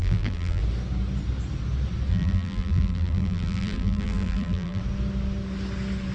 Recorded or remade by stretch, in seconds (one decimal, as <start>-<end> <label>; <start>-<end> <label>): 0.0-0.6 remade; 0.6-2.1 recorded; 2.1-4.8 remade; 4.8-6.1 recorded